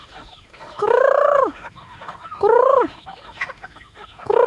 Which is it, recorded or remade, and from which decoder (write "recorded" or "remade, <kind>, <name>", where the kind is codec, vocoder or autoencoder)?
remade, autoencoder, DAC-VAE